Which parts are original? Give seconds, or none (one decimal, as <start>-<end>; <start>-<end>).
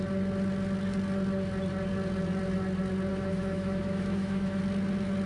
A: 0.0-3.1; 4.6-5.3